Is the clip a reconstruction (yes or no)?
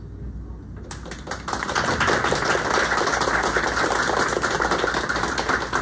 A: no